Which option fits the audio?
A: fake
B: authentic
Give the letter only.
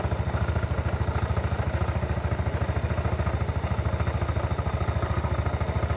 B